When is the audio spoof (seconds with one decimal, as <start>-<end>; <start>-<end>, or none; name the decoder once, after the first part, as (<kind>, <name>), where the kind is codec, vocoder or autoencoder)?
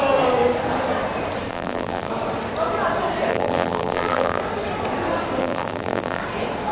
1.5-2.1 (vocoder, BigVGAN v2); 3.3-4.4; 5.4-6.2